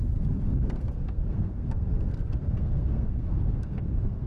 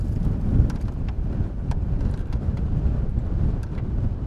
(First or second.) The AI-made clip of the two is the first